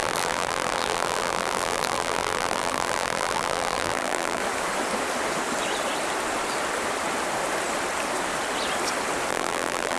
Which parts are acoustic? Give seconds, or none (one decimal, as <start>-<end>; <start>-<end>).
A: 4.4-9.3